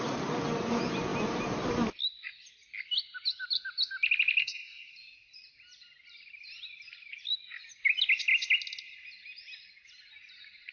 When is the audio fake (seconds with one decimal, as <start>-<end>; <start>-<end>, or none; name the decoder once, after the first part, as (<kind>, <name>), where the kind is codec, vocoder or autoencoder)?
4.4-4.9 (codec, SNAC)